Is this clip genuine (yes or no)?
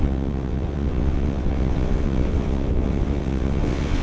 no